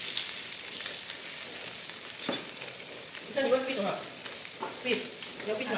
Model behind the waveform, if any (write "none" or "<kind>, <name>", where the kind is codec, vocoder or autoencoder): none